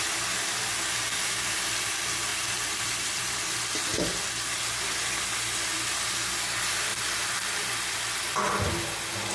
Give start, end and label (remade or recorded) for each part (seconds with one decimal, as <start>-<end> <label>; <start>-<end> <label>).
0.0-6.9 recorded; 6.9-8.0 remade; 8.0-9.3 recorded